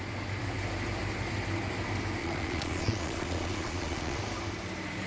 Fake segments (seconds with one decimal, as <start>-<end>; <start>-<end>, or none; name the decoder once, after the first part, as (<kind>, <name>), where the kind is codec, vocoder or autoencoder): 2.2-4.2 (vocoder, Vocos)